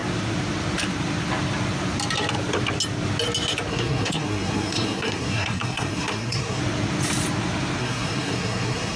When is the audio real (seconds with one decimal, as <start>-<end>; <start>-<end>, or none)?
0.0-3.7; 6.6-7.8